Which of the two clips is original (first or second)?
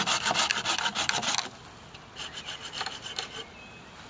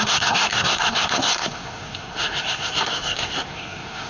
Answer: first